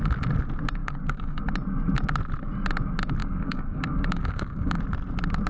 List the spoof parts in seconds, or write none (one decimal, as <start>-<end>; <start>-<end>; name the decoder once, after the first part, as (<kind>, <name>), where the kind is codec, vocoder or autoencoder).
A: 0.8-1.4 (codec, DAC); 3.2-4.8